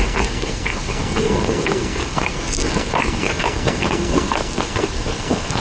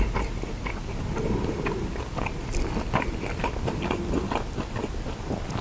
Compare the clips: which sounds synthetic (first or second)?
first